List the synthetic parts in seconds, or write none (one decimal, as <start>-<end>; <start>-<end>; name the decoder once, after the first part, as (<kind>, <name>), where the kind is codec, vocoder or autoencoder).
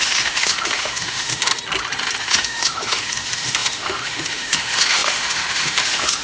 0.0-1.5 (autoencoder, DAC-VAE); 2.2-6.2